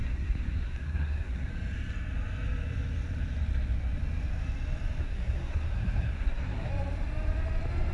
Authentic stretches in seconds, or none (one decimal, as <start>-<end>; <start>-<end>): 1.5-5.0; 6.7-7.9